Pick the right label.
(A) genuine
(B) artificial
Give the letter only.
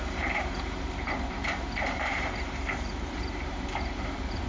B